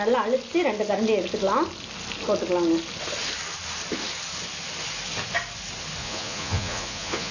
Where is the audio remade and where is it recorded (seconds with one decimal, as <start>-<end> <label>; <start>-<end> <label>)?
0.0-6.0 recorded; 6.0-7.3 remade